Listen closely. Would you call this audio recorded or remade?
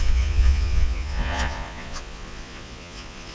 remade